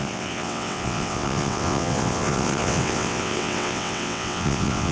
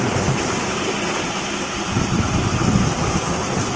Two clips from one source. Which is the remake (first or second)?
first